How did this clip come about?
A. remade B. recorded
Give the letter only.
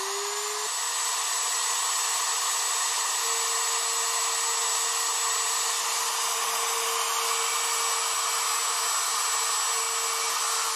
B